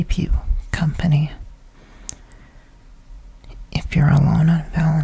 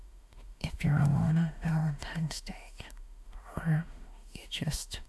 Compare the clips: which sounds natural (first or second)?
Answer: first